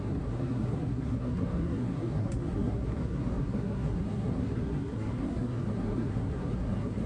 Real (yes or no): no